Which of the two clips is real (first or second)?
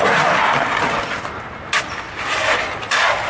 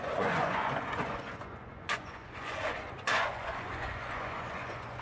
first